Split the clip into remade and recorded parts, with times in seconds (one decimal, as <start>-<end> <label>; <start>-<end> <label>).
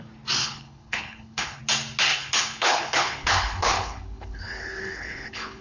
0.0-0.4 recorded; 0.4-1.6 remade; 1.6-2.1 recorded; 2.1-5.6 remade